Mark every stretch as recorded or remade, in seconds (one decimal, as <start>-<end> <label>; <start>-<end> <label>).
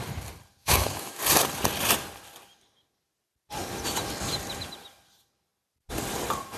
0.0-0.6 recorded; 0.6-1.2 remade; 1.2-6.6 recorded